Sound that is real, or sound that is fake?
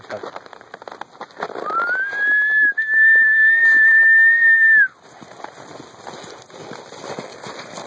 real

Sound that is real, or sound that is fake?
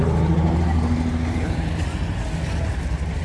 real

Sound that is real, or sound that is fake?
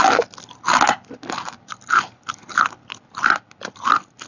real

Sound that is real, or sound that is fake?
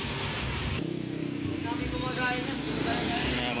real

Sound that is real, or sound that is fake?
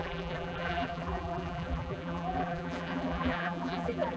fake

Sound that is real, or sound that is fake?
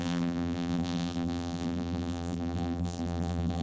fake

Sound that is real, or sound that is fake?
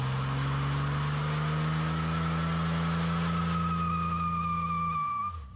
real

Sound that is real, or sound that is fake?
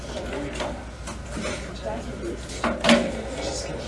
real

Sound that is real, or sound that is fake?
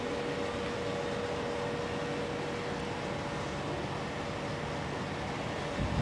real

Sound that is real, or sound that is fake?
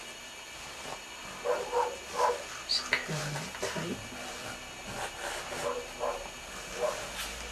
real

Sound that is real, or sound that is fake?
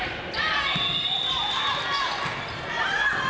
real